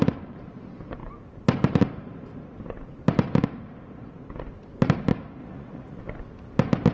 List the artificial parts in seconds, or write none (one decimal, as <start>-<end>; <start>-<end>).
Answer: 5.4-6.0